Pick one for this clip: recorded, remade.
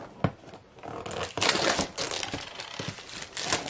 recorded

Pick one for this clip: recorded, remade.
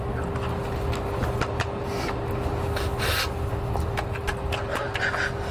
recorded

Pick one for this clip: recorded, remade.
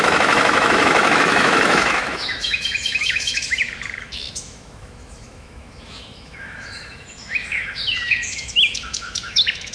remade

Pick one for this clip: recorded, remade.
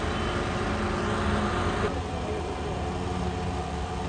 recorded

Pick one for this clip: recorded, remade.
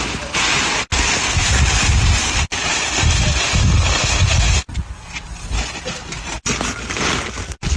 recorded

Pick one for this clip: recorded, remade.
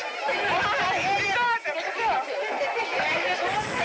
recorded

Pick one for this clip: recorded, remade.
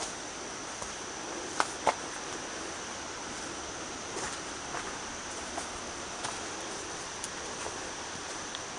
recorded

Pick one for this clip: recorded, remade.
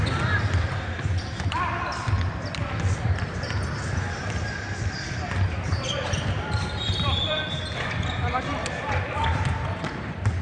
remade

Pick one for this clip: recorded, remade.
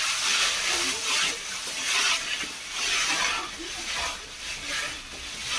recorded